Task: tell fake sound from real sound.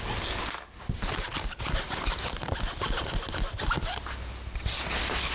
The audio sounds real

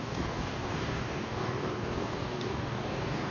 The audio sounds fake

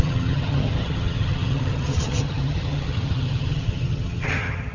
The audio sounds fake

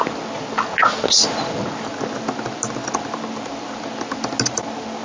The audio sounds real